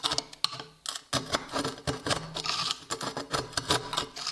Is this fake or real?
real